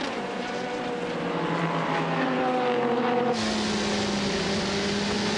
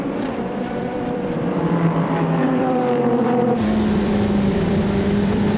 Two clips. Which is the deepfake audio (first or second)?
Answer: second